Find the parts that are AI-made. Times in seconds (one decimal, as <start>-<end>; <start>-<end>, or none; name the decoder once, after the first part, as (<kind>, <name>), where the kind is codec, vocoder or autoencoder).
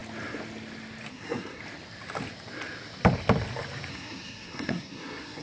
1.1-1.6 (codec, SNAC); 3.9-5.4